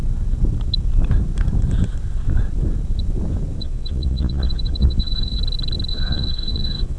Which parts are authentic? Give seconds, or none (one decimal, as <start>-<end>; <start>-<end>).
0.0-3.6; 5.4-5.9